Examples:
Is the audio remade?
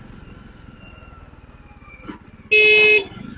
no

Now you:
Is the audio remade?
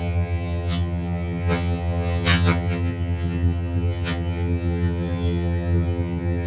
yes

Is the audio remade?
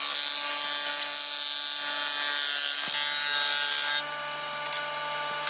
no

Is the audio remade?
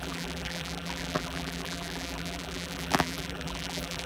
yes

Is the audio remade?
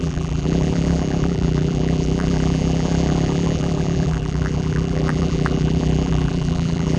yes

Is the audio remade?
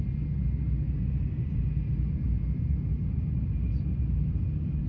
no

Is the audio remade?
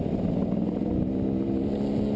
no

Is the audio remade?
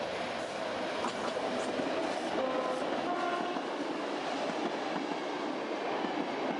no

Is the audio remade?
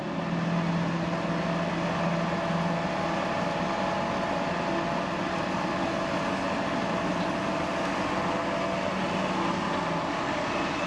no